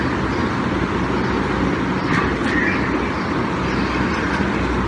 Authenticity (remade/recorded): recorded